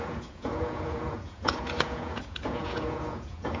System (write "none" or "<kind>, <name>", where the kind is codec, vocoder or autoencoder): vocoder, Vocos